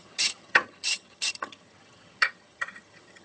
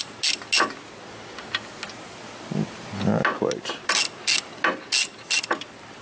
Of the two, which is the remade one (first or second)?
first